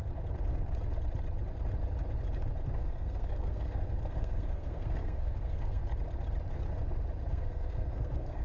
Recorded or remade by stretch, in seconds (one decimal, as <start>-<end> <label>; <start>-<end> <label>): 0.0-2.8 recorded; 2.8-5.8 remade; 5.8-7.3 recorded; 7.3-8.4 remade